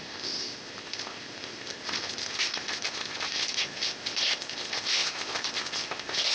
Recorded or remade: remade